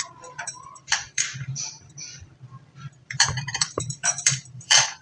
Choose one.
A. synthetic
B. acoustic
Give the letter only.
A